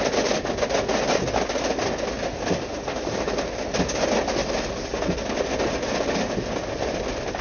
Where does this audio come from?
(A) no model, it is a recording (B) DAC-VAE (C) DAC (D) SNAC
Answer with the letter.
A